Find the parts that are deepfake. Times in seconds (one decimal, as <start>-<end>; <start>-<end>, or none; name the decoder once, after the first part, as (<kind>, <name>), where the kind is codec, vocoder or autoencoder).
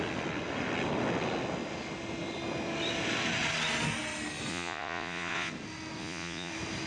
4.5-5.5 (vocoder, Vocos); 6.0-6.5